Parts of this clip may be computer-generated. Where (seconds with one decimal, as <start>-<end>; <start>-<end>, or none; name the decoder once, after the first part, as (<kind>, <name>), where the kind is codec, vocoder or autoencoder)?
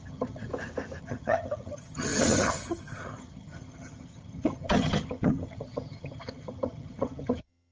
0.0-0.5 (vocoder, HiFi-GAN); 1.0-7.7